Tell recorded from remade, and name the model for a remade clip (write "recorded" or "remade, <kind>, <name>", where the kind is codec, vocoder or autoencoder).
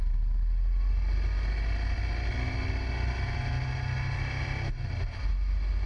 recorded